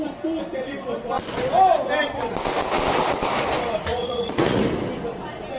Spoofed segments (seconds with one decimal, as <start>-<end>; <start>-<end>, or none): 3.9-4.6